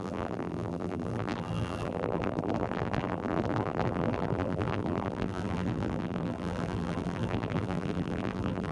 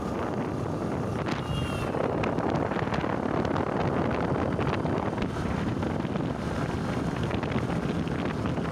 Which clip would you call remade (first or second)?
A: first